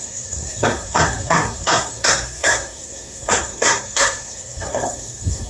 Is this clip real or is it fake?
fake